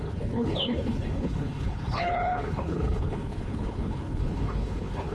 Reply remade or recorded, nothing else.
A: remade